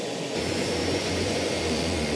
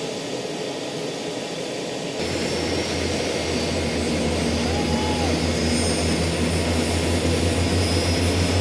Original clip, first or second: second